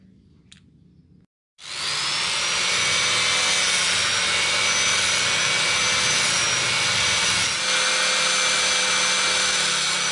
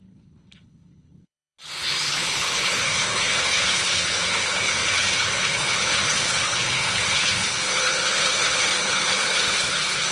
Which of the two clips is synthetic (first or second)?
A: second